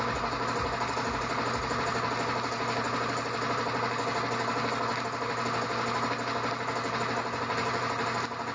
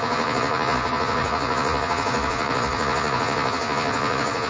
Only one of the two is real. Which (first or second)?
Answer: first